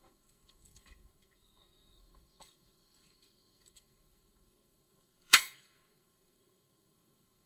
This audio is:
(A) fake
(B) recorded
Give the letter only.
A